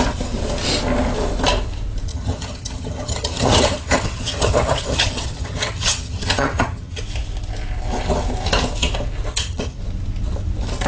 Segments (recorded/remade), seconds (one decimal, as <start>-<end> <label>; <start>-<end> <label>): 0.0-2.1 recorded; 2.1-7.0 remade; 7.0-9.3 recorded; 9.3-9.8 remade; 9.8-10.9 recorded